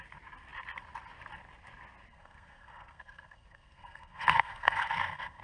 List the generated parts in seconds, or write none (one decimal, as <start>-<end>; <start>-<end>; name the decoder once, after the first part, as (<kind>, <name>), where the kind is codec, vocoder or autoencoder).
2.1-5.4 (codec, SNAC)